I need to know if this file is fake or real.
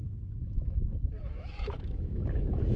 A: fake